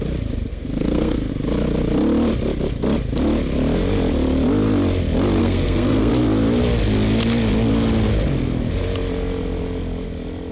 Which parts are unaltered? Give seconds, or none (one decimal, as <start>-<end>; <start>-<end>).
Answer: 0.0-0.5; 1.3-5.4; 6.1-10.5